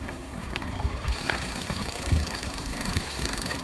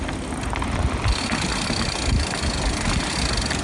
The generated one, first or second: first